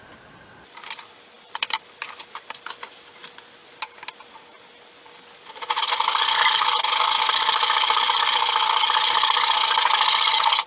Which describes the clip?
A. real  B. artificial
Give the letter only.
A